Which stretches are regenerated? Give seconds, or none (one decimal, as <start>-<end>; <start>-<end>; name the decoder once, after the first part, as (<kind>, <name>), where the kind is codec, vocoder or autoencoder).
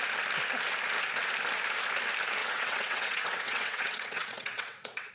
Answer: 2.4-5.1 (vocoder, WaveNeXt)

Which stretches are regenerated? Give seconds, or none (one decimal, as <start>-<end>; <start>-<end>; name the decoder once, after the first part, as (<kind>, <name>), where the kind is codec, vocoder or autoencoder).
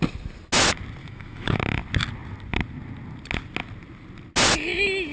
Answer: 1.0-1.6 (autoencoder, DAC-VAE)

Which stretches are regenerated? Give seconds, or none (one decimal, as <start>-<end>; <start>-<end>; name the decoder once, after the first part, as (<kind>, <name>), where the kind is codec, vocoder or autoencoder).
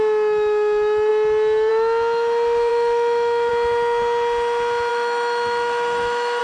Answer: 2.7-3.5 (autoencoder, DAC-VAE); 4.9-6.4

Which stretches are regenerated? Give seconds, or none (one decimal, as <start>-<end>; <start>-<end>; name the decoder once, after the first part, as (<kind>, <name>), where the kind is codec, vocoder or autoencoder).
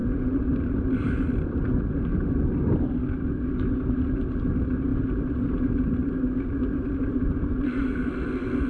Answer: 0.0-1.1 (vocoder, BigVGAN v2); 4.9-5.7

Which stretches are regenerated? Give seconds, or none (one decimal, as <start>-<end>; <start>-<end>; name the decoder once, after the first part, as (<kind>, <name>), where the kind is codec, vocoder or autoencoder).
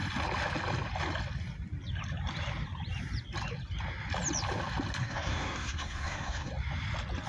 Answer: 5.0-6.5 (codec, SNAC)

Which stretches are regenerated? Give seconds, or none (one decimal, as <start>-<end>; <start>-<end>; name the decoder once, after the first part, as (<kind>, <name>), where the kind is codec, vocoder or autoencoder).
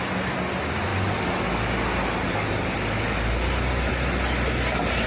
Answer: none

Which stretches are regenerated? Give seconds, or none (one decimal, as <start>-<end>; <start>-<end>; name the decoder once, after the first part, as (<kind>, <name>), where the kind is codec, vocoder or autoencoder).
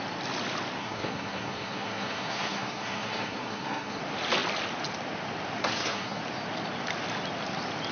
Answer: 0.8-4.0 (codec, SNAC); 5.6-6.2